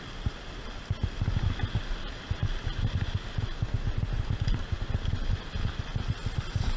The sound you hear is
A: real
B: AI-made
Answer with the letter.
A